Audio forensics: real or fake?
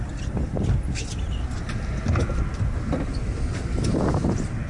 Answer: real